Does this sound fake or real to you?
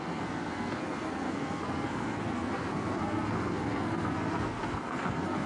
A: fake